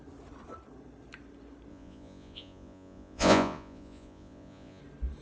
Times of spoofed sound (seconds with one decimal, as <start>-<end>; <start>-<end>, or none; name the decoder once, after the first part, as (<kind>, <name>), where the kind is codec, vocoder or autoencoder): 1.7-4.8 (vocoder, Vocos)